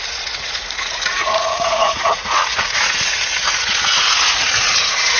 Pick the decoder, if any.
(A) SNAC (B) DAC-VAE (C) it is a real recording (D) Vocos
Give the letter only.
D